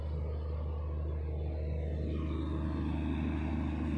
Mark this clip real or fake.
real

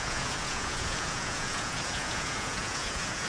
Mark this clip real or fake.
fake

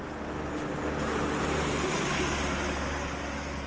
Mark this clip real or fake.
real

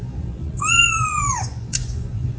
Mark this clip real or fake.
fake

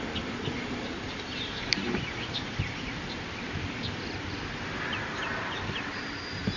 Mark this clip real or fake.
real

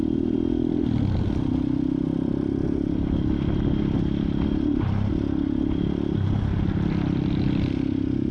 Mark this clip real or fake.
real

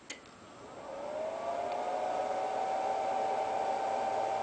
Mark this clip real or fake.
real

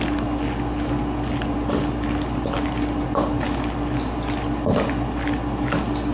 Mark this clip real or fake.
real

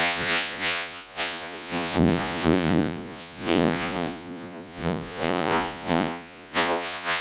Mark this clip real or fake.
fake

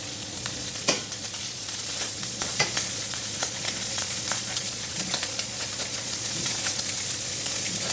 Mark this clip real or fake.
fake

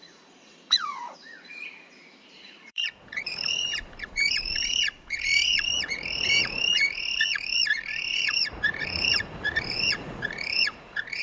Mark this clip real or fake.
fake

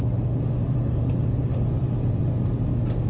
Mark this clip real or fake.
real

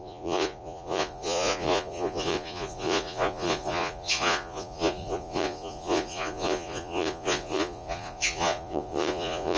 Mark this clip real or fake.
fake